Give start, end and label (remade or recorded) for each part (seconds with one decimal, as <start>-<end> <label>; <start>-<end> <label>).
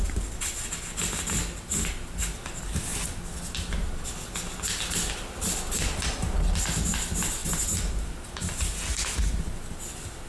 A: 0.0-10.3 recorded